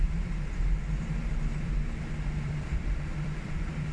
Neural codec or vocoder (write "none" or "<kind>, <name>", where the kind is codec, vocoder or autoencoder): vocoder, BigVGAN v2